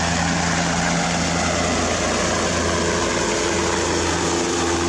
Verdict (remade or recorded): recorded